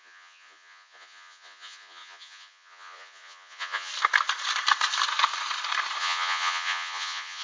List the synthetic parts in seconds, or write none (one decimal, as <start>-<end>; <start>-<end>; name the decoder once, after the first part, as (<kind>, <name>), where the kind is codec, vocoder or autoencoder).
0.0-3.9 (vocoder, Vocos); 6.0-7.4